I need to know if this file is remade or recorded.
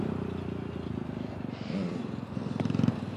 recorded